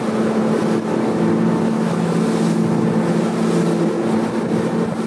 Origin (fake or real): real